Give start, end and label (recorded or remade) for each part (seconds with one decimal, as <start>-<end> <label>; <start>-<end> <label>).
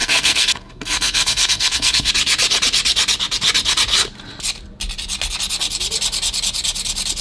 0.0-2.1 remade; 2.1-7.2 recorded